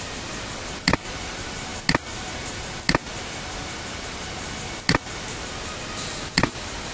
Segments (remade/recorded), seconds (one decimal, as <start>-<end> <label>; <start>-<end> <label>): 0.0-6.9 recorded